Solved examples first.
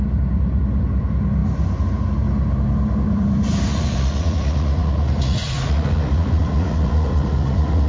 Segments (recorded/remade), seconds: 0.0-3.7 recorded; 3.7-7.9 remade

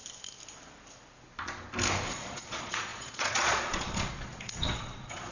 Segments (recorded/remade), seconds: 0.0-2.1 recorded; 2.1-5.3 remade

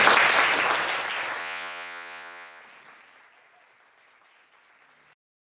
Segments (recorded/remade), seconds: 0.0-1.4 recorded; 1.4-2.6 remade; 2.6-5.5 recorded

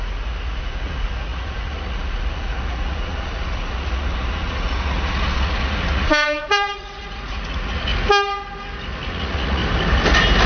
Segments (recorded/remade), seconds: 0.0-7.9 remade; 7.9-9.1 recorded; 9.1-9.6 remade; 9.6-10.5 recorded

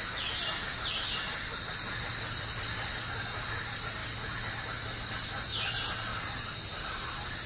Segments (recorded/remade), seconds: 0.0-7.5 recorded

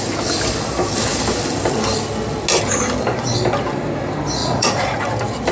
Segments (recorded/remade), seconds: 0.0-4.4 recorded; 4.4-5.0 remade; 5.0-5.5 recorded

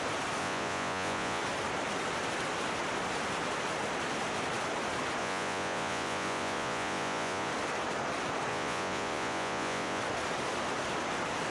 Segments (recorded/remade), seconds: 0.0-0.4 recorded; 0.4-1.4 remade; 1.4-5.2 recorded; 5.2-7.5 remade; 7.5-8.5 recorded; 8.5-10.0 remade; 10.0-11.5 recorded